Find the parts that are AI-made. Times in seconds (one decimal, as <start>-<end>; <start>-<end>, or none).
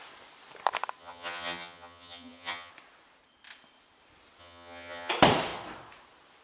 1.0-2.7; 4.4-5.1